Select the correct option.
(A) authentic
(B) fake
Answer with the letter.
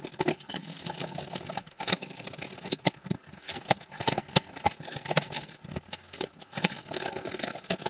B